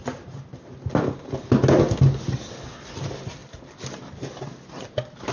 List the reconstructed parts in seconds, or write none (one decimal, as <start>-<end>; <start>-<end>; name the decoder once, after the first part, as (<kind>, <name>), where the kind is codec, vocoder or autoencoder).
none